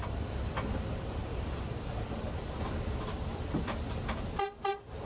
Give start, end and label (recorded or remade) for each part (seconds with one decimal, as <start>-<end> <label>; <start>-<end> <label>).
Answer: 0.0-1.2 recorded; 1.2-4.3 remade; 4.3-5.1 recorded